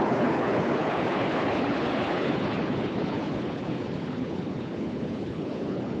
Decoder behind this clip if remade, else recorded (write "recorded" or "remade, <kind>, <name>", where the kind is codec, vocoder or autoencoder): remade, codec, HILCodec